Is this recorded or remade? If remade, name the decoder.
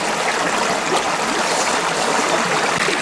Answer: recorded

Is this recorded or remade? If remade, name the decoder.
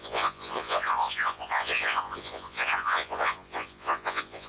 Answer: remade, vocoder, Vocos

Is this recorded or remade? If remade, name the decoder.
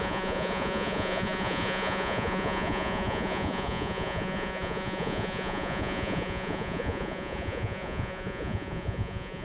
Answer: remade, vocoder, Vocos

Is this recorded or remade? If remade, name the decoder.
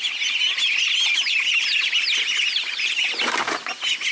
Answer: recorded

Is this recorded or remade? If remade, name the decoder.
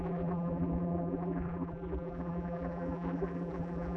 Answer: remade, vocoder, BigVGAN v2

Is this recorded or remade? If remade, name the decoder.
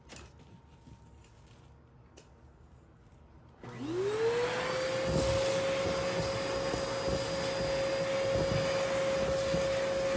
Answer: recorded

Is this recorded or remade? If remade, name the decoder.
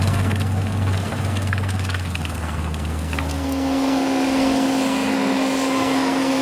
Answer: remade, codec, SNAC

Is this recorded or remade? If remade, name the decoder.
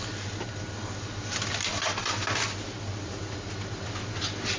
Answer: recorded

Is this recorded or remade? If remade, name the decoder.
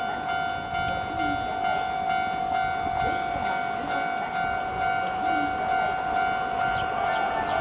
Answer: recorded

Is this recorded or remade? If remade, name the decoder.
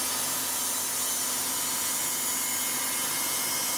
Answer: recorded